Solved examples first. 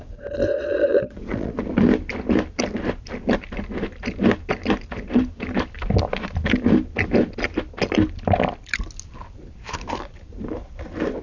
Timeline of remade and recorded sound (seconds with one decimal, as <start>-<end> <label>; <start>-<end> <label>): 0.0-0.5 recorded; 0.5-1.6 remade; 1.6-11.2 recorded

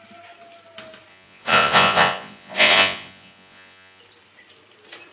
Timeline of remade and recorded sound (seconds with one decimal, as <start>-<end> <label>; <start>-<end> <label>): 0.0-1.1 recorded; 1.1-4.0 remade; 4.0-5.1 recorded

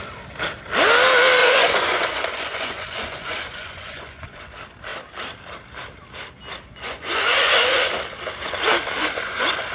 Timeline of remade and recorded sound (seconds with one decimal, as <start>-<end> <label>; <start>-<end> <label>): 0.0-1.4 recorded; 1.4-4.5 remade; 4.5-6.7 recorded; 6.7-7.9 remade; 7.9-9.0 recorded; 9.0-9.7 remade